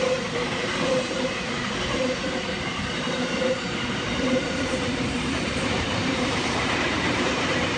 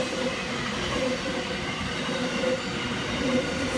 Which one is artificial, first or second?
first